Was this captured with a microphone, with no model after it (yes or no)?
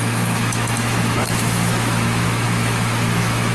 no